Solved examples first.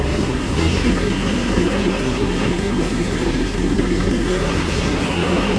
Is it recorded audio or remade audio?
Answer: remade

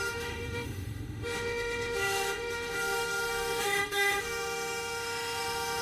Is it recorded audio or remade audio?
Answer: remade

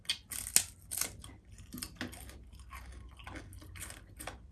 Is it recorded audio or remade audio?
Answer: recorded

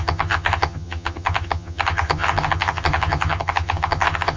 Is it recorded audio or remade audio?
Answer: remade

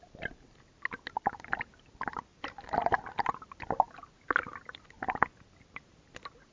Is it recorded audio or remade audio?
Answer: recorded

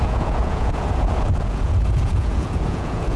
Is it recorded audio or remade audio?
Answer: remade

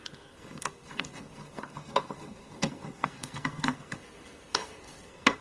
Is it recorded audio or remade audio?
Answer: remade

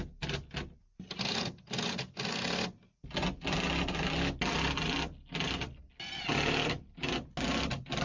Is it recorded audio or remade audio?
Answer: recorded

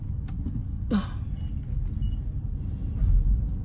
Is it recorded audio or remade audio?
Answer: recorded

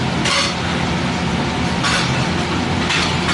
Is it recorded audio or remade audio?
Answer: recorded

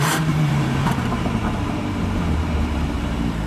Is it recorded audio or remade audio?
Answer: remade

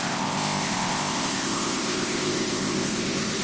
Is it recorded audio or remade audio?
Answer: remade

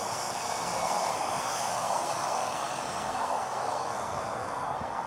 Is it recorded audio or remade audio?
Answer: remade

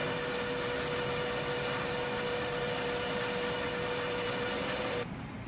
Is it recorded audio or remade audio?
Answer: recorded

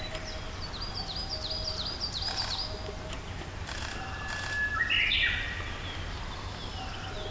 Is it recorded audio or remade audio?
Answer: recorded